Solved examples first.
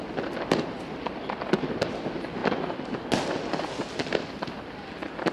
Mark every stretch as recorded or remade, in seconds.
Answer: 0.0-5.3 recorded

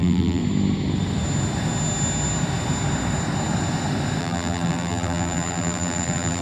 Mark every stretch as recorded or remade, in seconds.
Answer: 0.0-0.4 remade; 0.4-4.2 recorded; 4.2-6.4 remade

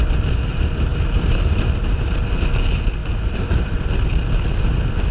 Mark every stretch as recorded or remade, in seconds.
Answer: 0.0-0.9 recorded; 0.9-2.4 remade; 2.4-3.0 recorded; 3.0-3.8 remade; 3.8-5.1 recorded

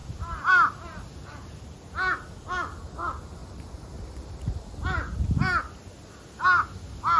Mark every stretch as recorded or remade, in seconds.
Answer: 0.0-1.6 remade; 1.6-3.4 recorded; 3.4-3.9 remade; 3.9-7.2 recorded

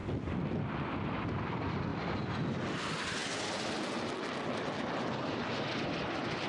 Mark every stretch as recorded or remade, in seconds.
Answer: 0.0-6.5 recorded

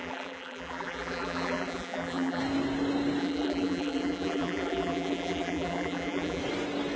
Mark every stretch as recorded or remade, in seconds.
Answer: 0.0-2.4 remade; 2.4-3.2 recorded; 3.2-6.4 remade; 6.4-7.0 recorded